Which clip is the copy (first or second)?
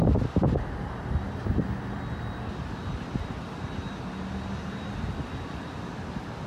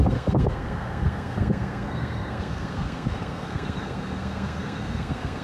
second